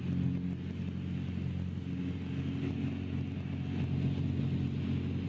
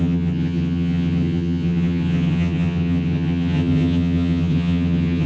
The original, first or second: first